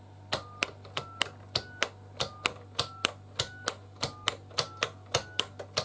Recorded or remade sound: recorded